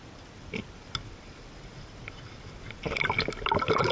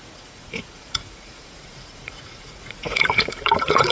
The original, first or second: first